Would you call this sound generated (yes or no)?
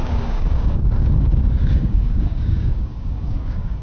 yes